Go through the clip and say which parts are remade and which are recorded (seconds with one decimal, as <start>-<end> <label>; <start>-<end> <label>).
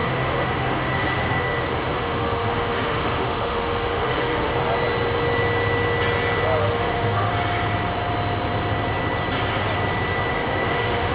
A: 0.0-4.5 remade; 4.5-6.6 recorded; 6.6-7.3 remade; 7.3-10.3 recorded; 10.3-11.1 remade